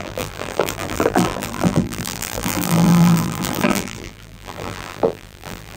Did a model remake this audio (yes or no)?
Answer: yes